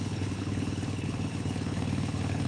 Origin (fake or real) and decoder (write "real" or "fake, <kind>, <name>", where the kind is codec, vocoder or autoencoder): fake, codec, HILCodec